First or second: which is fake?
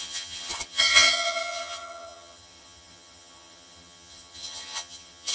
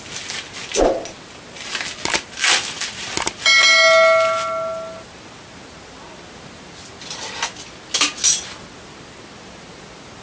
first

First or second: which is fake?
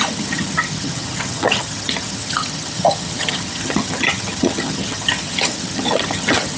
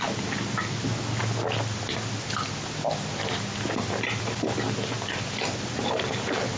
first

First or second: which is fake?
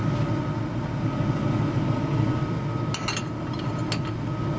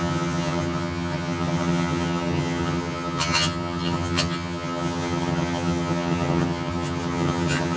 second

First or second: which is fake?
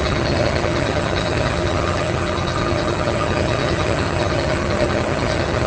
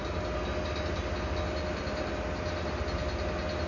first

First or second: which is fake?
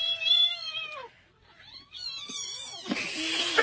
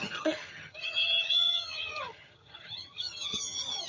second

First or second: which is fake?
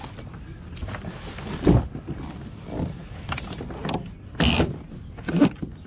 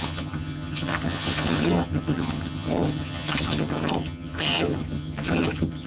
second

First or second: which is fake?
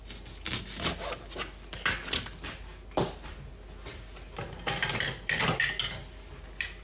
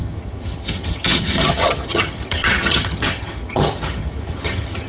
second